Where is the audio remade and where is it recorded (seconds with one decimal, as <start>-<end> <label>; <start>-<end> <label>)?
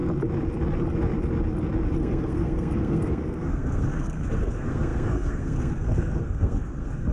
0.0-2.0 recorded; 2.0-7.1 remade